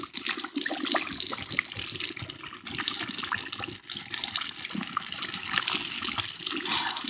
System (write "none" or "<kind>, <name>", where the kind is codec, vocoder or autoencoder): none